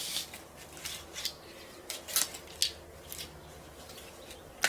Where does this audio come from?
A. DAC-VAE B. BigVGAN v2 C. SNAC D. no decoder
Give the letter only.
D